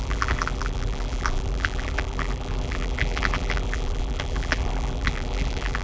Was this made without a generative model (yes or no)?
no